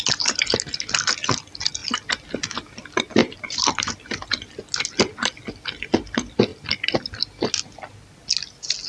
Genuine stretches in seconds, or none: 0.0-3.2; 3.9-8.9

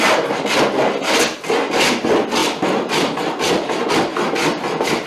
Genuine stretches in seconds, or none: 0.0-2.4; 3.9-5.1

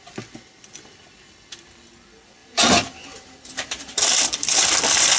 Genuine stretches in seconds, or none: 0.0-2.4; 4.2-5.2